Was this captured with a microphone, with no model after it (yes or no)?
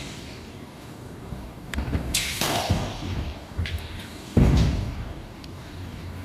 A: no